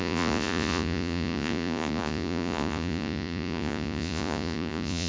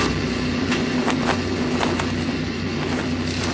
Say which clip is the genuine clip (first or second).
second